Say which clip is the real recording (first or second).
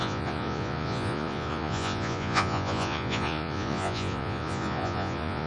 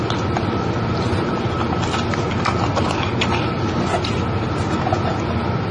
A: second